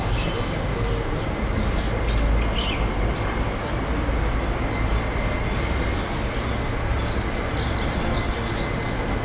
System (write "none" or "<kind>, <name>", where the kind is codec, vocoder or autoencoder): none